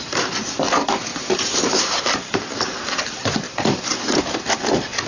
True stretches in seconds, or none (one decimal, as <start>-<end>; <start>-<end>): 0.0-1.1; 4.2-5.1